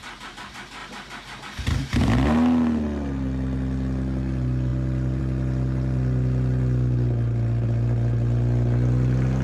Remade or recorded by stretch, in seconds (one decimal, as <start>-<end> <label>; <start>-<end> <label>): 0.0-9.4 recorded